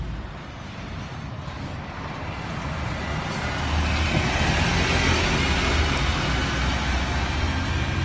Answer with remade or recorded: recorded